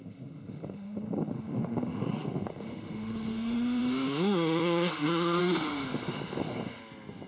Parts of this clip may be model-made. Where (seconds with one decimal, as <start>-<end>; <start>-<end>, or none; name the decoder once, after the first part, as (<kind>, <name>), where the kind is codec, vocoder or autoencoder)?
0.0-6.8 (autoencoder, DAC-VAE)